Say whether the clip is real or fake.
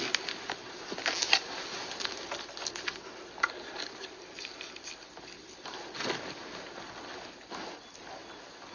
real